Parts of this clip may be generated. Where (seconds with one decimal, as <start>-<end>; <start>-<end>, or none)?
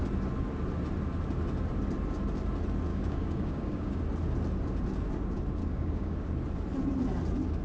2.9-4.0; 5.6-6.3